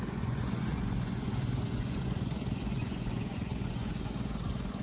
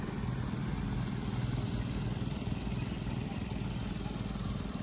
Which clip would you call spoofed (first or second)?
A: first